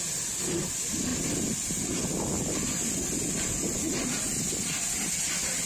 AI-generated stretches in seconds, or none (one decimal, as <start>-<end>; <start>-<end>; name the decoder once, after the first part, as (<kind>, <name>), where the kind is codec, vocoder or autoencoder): none